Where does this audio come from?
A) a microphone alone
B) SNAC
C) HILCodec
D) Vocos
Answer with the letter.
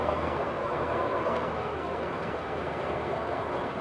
B